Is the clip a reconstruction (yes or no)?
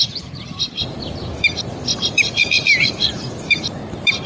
no